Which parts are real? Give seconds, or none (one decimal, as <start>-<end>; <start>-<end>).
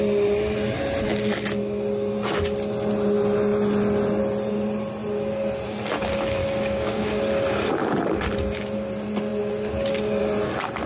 0.0-6.4; 7.2-10.9